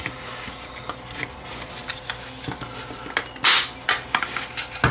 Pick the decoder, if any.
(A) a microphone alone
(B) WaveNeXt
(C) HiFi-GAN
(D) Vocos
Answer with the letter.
A